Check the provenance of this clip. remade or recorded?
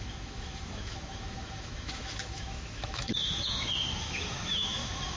remade